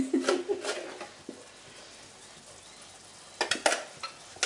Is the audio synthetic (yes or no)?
no